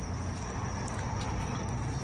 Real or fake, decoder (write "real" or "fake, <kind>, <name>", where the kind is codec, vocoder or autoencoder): real